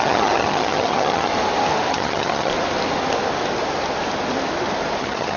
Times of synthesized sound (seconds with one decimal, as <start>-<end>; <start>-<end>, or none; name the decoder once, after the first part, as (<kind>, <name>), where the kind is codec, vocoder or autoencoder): 0.0-1.3 (vocoder, HiFi-GAN); 1.9-2.5; 5.0-5.4